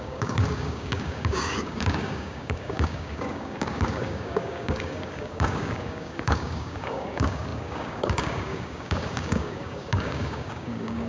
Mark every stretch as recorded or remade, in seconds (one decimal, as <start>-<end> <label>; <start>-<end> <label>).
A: 0.0-11.1 remade